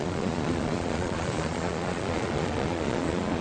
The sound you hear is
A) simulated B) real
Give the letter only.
A